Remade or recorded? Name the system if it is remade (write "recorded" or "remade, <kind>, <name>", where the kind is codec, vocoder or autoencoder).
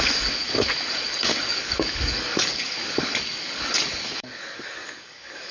remade, codec, DAC